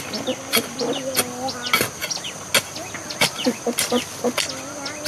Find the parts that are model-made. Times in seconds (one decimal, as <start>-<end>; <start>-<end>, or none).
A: 2.0-2.5